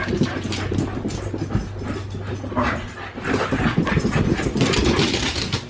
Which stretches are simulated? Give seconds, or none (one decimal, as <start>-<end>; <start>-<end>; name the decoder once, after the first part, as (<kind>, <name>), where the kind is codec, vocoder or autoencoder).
none